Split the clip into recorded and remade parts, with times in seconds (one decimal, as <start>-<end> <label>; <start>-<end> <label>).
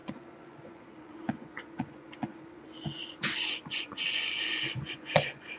0.0-5.6 remade